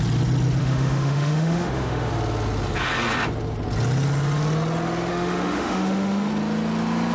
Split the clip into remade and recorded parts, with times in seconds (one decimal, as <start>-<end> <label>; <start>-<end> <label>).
0.0-0.6 recorded; 0.6-2.1 remade; 2.1-5.1 recorded; 5.1-6.3 remade; 6.3-7.1 recorded